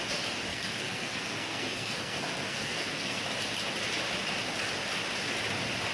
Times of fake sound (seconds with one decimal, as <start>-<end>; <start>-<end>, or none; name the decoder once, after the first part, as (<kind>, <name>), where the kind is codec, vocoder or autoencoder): 0.5-3.2 (codec, SNAC)